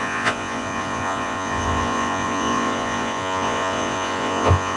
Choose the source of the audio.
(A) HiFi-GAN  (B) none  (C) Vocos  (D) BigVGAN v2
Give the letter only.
C